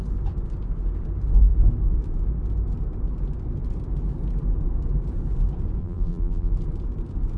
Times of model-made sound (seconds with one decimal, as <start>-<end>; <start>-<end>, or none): 5.8-6.5